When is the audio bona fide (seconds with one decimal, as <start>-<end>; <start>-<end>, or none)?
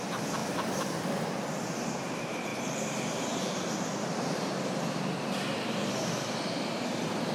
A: 0.0-0.4; 1.6-2.5